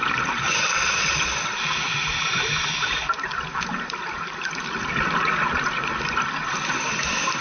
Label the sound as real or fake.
real